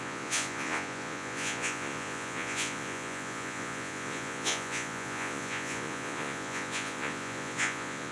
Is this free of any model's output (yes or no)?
no